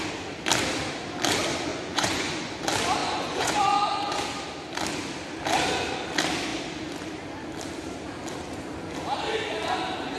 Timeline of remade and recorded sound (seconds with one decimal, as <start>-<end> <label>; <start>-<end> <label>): 0.0-1.7 recorded; 1.7-2.5 remade; 2.5-3.0 recorded; 3.0-4.2 remade; 4.2-10.2 recorded